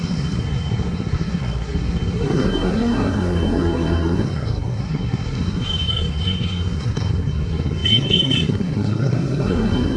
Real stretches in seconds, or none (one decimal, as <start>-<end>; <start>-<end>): none